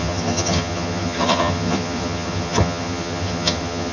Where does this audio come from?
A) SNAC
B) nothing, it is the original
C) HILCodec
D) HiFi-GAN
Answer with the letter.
D